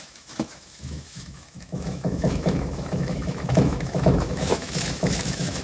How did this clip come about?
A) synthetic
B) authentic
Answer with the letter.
A